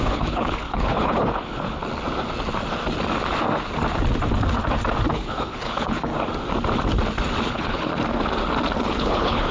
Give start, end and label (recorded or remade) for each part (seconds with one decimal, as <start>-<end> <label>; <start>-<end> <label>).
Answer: 0.0-1.8 remade; 1.8-5.1 recorded; 5.1-6.1 remade; 6.1-7.5 recorded; 7.5-7.9 remade; 7.9-8.8 recorded; 8.8-9.5 remade